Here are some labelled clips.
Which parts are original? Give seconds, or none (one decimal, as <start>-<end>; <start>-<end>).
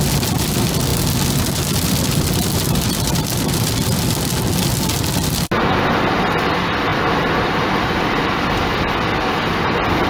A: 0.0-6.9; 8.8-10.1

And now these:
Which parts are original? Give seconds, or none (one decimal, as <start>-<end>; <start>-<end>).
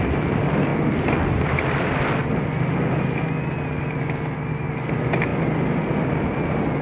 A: 0.0-6.8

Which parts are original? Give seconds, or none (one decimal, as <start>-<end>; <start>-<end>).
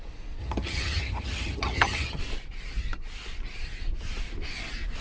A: 0.0-0.4; 2.2-5.0